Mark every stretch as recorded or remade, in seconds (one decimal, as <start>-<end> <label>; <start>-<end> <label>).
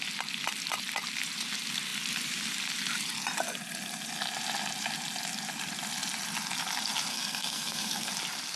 0.0-7.1 recorded; 7.1-8.1 remade; 8.1-8.6 recorded